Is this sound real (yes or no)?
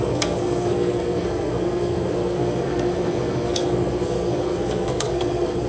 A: no